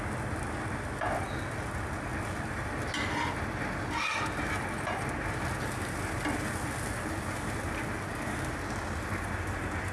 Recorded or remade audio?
recorded